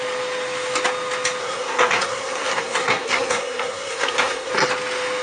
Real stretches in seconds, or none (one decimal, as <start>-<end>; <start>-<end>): 0.0-1.4; 4.5-5.2